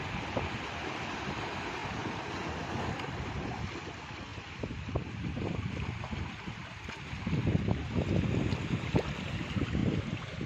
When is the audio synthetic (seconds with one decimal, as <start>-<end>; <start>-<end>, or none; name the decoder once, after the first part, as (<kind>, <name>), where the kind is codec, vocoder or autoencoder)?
none